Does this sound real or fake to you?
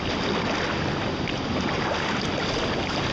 real